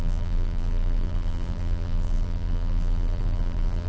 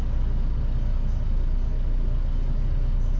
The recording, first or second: second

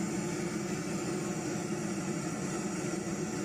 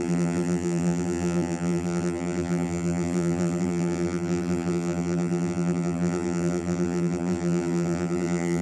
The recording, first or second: first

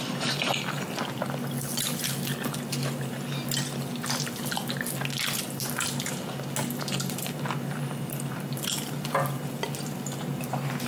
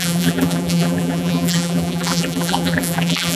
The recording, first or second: first